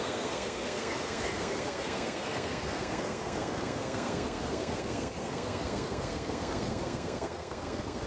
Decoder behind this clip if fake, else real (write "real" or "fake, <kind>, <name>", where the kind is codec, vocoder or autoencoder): fake, codec, SNAC